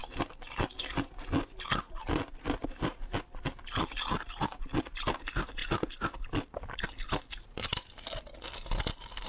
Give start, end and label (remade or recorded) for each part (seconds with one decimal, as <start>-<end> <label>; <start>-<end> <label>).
0.0-9.3 recorded